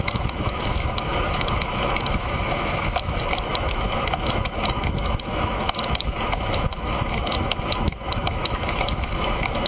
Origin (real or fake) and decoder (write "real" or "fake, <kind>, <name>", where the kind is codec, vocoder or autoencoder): fake, autoencoder, DAC-VAE